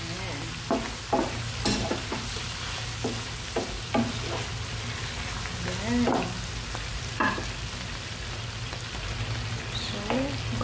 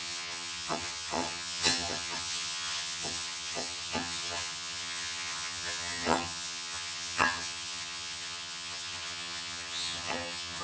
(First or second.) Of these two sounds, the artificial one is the second